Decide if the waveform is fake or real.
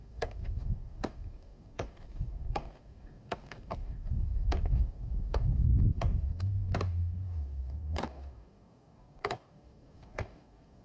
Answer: fake